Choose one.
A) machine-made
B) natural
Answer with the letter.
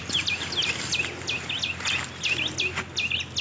B